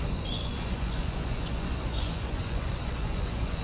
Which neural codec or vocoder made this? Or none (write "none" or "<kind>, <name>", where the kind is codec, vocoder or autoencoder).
vocoder, Vocos